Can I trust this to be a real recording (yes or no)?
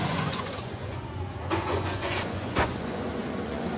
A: no